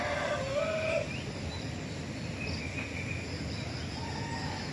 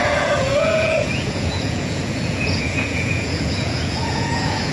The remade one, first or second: second